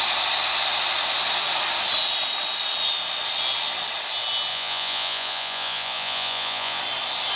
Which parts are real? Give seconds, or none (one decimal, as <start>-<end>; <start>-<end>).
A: 0.0-4.5; 6.8-7.4